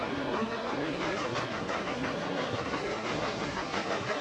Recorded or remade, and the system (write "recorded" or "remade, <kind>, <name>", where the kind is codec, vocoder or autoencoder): remade, codec, SNAC